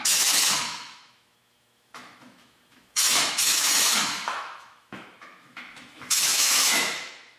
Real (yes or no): no